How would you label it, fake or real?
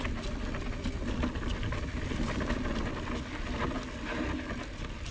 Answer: real